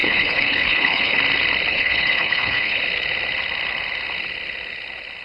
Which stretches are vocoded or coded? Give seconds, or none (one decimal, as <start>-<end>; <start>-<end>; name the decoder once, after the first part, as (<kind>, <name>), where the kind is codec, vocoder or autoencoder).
0.0-1.2 (codec, HILCodec); 1.7-2.8